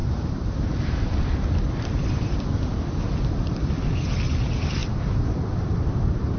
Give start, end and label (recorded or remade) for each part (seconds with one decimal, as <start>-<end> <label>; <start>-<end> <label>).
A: 0.0-0.6 remade; 0.6-6.4 recorded